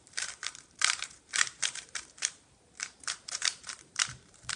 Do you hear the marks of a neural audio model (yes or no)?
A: yes